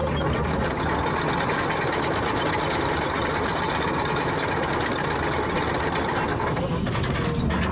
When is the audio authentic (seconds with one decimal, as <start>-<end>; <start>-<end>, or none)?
0.0-7.7